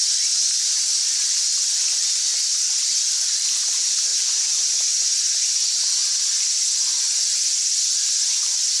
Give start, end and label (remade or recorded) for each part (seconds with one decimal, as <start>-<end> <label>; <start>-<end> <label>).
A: 0.0-8.8 recorded